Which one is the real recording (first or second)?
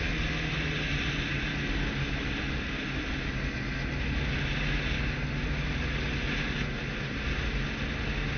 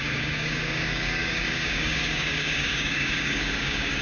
first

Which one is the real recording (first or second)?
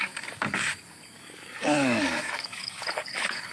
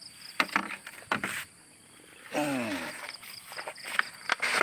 second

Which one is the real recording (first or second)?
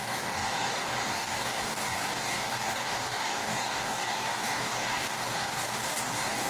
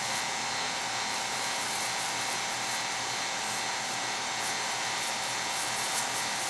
second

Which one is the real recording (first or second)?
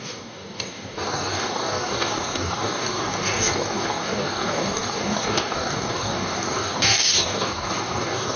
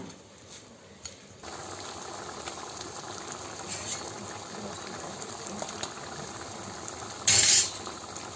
second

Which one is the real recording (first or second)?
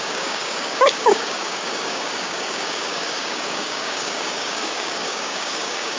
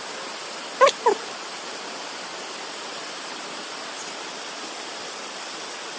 second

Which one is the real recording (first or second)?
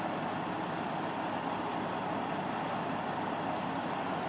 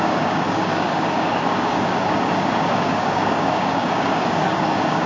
first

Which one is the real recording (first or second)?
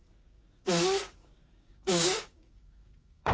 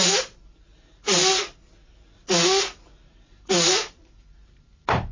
second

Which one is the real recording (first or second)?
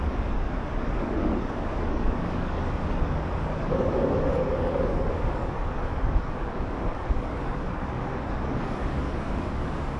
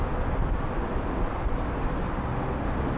second